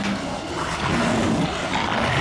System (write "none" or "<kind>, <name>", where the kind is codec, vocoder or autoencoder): none